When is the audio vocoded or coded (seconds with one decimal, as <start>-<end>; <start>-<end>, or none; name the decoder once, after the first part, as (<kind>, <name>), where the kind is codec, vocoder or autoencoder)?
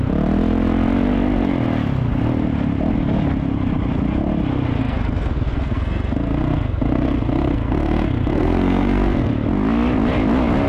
4.8-9.3 (codec, SNAC)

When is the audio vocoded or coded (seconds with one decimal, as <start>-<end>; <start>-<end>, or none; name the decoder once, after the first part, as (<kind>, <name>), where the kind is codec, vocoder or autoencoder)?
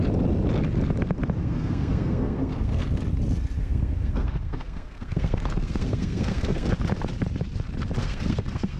1.4-3.0 (codec, SNAC); 3.6-6.7; 8.0-8.8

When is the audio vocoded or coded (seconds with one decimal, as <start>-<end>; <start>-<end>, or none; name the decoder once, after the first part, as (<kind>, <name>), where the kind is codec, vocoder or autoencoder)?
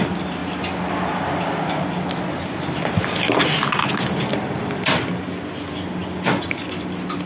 none